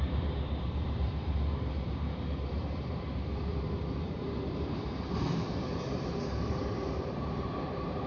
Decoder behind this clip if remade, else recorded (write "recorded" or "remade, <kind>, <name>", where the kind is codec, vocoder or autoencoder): remade, vocoder, BigVGAN v2